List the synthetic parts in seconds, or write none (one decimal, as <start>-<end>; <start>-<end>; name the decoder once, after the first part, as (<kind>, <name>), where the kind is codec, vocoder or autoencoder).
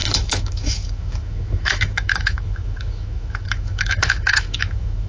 0.0-5.1 (autoencoder, DAC-VAE)